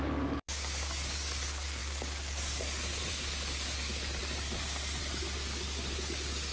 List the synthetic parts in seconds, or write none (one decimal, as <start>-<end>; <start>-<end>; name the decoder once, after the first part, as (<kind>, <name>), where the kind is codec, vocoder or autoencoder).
0.0-4.2 (codec, DAC); 5.0-6.5